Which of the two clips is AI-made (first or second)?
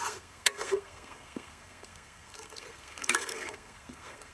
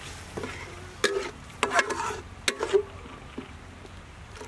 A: first